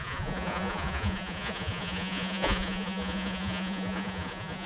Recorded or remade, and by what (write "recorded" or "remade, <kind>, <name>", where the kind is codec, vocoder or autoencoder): remade, vocoder, Vocos